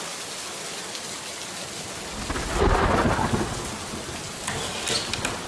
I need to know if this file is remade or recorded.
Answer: recorded